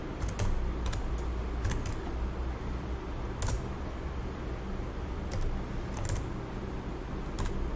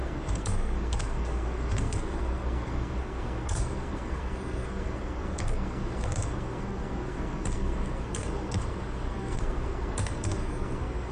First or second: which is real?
first